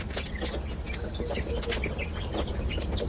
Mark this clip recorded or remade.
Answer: recorded